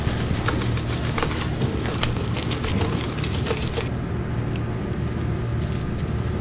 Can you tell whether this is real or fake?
real